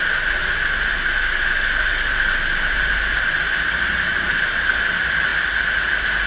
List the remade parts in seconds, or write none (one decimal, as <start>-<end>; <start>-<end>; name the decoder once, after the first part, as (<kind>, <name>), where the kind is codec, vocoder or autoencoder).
none